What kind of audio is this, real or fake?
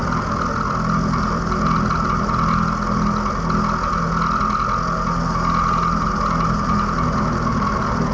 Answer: real